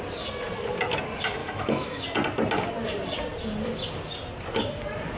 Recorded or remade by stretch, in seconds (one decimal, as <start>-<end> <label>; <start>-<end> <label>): 0.0-1.4 recorded; 1.4-2.0 remade; 2.0-5.2 recorded